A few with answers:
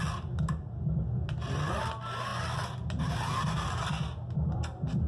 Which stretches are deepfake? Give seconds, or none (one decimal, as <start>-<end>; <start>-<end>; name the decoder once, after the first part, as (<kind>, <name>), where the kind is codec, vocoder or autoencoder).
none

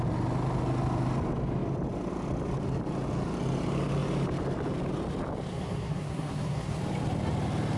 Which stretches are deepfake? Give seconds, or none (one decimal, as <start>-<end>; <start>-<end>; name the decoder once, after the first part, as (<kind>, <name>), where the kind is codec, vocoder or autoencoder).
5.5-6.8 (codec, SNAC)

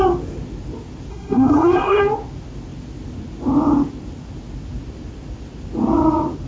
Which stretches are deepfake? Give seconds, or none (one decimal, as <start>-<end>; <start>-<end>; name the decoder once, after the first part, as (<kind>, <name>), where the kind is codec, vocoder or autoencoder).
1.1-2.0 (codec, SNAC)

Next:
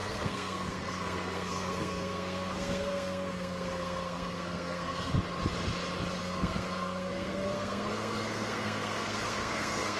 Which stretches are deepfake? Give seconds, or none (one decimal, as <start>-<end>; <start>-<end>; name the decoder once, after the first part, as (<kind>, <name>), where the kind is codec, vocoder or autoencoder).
0.0-5.1 (codec, SNAC); 6.2-10.0

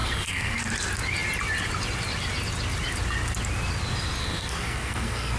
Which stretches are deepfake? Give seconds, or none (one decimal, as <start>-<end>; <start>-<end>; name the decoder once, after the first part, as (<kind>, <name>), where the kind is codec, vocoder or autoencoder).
0.0-0.6 (codec, SNAC); 4.2-5.4